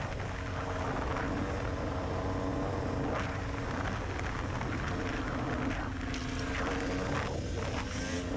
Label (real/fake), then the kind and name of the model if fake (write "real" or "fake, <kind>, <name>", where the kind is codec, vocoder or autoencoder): real